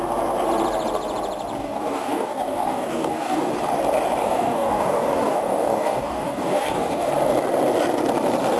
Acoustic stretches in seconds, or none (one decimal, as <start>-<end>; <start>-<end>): 0.0-1.6; 3.5-4.2; 7.1-8.6